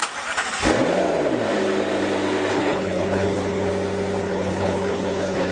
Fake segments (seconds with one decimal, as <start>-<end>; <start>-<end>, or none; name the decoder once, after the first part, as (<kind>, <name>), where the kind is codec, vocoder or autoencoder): 2.5-3.7 (codec, HILCodec); 4.2-5.5